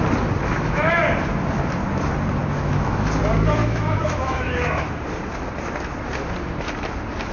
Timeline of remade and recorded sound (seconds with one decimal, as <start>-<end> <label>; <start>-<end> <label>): 0.0-0.4 recorded; 0.4-0.9 remade; 0.9-2.4 recorded; 2.4-3.2 remade; 3.2-3.6 recorded; 3.6-4.9 remade; 4.9-7.3 recorded